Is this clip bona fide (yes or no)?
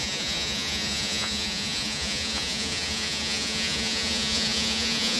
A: no